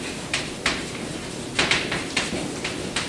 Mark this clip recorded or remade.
remade